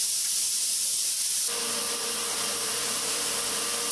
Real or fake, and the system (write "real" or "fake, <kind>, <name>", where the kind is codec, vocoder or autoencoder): real